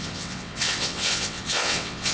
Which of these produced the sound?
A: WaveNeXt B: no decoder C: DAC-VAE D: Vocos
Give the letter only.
A